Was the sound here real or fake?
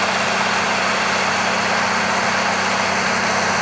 real